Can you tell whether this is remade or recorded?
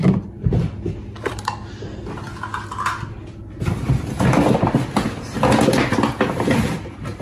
recorded